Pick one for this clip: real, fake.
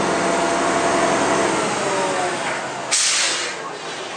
real